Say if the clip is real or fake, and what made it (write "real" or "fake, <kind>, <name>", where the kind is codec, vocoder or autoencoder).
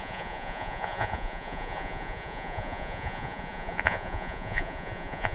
fake, vocoder, Vocos